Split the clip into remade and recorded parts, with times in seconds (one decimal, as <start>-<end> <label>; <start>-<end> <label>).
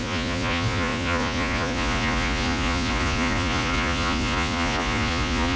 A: 0.0-5.6 remade